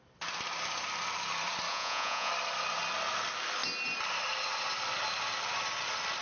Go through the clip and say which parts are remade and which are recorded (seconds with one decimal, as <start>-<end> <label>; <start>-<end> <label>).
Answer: 0.0-1.7 recorded; 1.7-2.3 remade; 2.3-6.2 recorded